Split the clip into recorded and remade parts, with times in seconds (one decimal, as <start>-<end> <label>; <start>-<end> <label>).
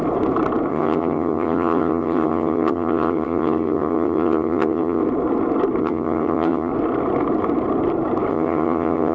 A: 0.0-0.7 recorded; 0.7-5.0 remade; 5.0-5.8 recorded; 5.8-6.7 remade; 6.7-8.3 recorded; 8.3-9.1 remade